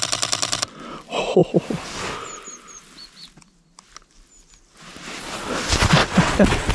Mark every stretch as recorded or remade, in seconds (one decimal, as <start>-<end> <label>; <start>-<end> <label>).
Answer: 0.0-6.0 recorded; 6.0-6.7 remade